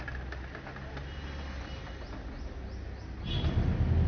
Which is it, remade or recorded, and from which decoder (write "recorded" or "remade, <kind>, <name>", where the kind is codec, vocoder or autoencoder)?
recorded